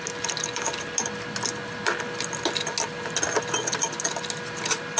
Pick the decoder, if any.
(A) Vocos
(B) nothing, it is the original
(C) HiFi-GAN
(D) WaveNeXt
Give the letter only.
B